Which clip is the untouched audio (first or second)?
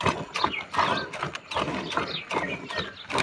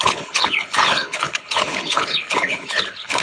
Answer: first